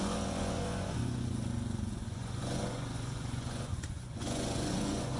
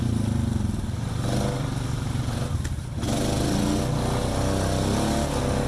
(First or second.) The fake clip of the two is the first